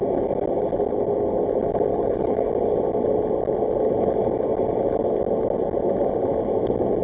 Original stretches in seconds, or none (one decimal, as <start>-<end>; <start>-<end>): 0.0-1.9; 2.5-7.0